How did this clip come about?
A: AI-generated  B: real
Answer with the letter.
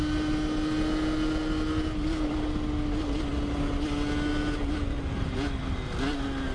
B